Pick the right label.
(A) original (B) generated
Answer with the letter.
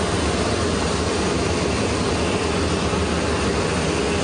A